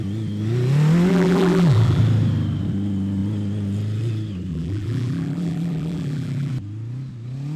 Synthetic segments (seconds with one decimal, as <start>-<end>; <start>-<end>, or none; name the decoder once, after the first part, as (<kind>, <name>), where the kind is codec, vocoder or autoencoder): 1.1-2.0 (vocoder, BigVGAN v2); 4.5-6.5